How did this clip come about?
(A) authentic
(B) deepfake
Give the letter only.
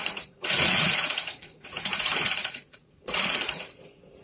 B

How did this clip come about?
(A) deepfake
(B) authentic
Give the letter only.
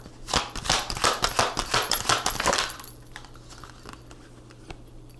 B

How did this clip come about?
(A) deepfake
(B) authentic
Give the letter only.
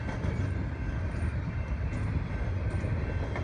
B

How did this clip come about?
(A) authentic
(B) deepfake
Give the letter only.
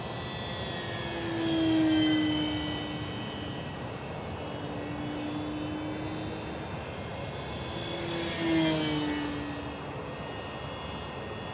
A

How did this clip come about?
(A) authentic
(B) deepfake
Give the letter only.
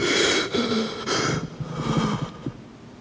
A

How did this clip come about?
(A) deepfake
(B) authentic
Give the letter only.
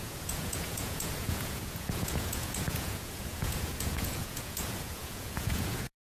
A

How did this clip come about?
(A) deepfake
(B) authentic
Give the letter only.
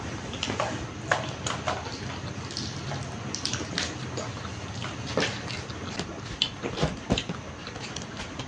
B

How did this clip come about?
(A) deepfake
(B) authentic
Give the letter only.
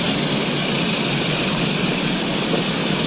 B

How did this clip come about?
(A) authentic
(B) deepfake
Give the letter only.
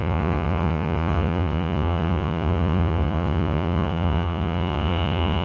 B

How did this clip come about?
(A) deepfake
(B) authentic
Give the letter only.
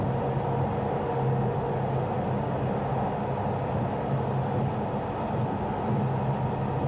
B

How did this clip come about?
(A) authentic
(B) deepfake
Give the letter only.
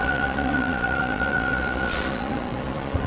B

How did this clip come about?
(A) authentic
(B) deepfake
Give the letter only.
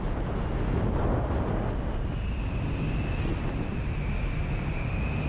A